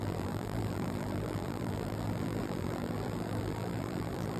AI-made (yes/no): yes